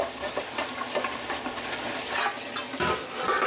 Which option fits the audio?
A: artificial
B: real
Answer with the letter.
B